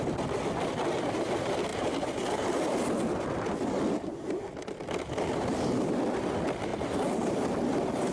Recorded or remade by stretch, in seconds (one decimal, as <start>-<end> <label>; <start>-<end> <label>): 0.0-8.1 recorded